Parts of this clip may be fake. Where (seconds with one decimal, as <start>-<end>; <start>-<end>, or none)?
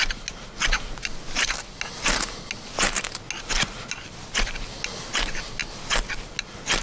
none